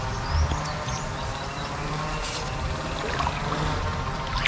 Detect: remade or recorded recorded